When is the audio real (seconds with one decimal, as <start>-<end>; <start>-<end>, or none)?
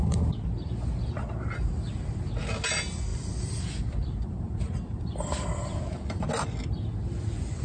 0.0-3.1; 6.3-7.6